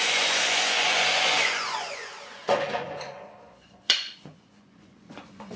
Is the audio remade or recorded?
remade